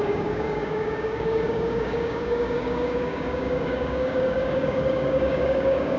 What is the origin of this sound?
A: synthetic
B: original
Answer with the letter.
A